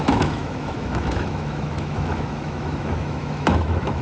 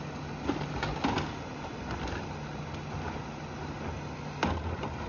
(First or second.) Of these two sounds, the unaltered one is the second